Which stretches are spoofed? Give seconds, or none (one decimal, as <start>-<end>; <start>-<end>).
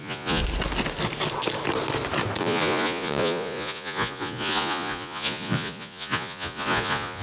0.0-0.4; 2.4-7.2